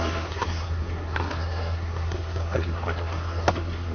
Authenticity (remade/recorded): remade